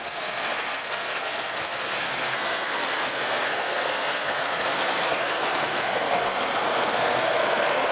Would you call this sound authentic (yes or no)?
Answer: no